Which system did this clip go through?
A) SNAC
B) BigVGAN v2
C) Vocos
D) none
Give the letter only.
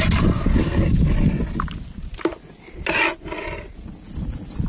D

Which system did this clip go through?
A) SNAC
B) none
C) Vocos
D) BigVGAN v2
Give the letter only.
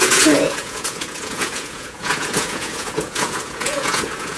C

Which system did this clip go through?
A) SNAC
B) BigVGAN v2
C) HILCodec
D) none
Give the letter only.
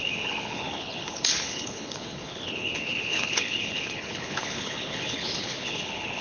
C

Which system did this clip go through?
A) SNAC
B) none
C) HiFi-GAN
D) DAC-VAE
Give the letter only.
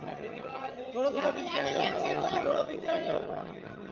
C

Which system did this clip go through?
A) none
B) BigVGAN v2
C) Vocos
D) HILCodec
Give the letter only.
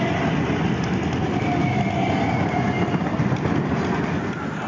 A